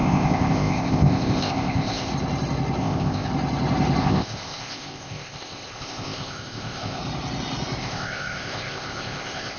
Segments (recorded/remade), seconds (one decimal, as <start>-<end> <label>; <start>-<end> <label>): 0.0-2.1 remade; 2.1-2.8 recorded; 2.8-3.3 remade; 3.3-4.0 recorded; 4.0-7.0 remade; 7.0-7.8 recorded; 7.8-9.6 remade